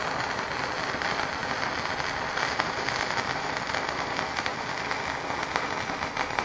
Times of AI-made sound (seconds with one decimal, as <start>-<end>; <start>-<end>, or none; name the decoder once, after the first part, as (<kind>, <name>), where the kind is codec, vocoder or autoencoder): none